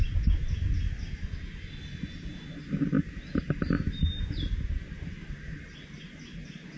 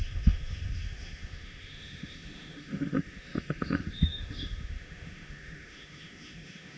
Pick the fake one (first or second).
second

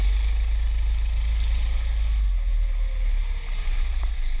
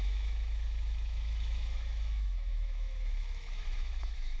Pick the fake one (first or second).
second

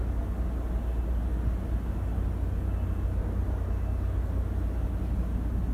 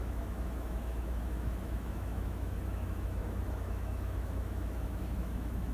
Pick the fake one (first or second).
second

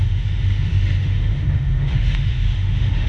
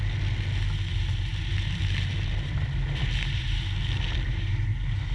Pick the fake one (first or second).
first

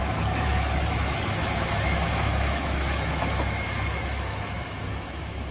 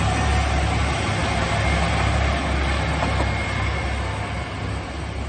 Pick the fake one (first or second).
first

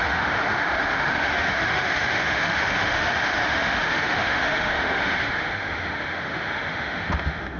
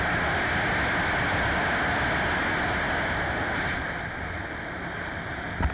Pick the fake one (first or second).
first